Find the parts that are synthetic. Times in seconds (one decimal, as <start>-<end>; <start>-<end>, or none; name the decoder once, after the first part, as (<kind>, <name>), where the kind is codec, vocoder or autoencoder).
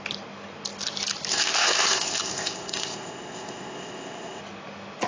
1.3-4.4 (codec, ZipCodec)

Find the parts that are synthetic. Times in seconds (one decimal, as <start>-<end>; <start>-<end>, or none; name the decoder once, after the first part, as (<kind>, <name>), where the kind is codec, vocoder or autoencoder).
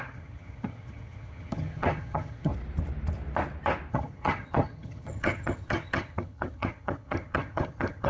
0.0-2.5 (vocoder, HiFi-GAN); 3.9-8.1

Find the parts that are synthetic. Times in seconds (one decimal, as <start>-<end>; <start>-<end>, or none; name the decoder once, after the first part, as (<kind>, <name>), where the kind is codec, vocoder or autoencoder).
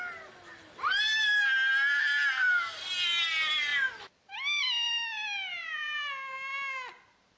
5.5-6.1 (vocoder, BigVGAN v2)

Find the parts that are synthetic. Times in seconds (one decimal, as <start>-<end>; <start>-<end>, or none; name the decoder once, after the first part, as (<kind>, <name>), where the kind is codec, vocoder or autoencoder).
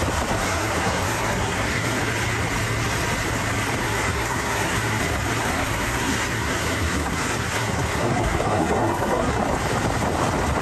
0.4-2.0 (codec, SNAC); 3.8-5.0; 5.4-9.4